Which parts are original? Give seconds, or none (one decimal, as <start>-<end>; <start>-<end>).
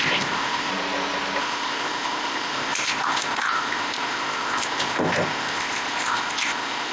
0.7-1.4